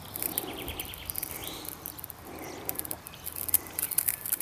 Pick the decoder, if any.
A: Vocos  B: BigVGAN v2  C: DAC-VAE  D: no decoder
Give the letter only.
B